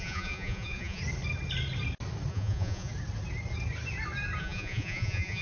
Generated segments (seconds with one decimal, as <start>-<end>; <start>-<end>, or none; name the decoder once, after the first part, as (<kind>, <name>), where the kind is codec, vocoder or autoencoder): 0.0-1.0 (vocoder, Vocos); 2.3-2.9; 4.4-5.4